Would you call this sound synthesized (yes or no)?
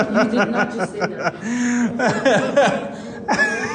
no